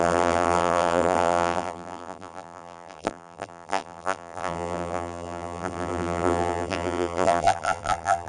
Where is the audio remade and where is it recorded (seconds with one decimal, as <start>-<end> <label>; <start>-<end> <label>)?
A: 0.0-8.3 remade